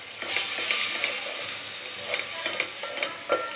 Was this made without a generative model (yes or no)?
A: yes